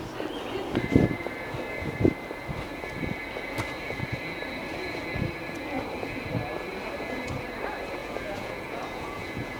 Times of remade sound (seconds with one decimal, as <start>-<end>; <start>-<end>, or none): 8.0-9.6